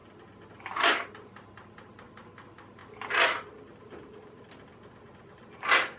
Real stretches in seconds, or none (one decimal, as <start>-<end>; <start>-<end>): 0.0-6.0